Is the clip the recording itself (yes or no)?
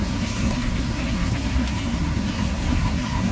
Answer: no